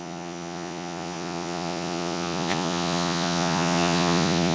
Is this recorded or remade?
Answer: remade